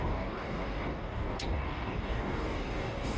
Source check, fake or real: fake